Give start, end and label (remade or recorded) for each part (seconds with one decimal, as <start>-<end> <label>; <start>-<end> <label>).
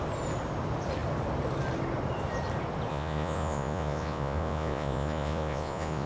0.0-2.9 recorded; 2.9-6.1 remade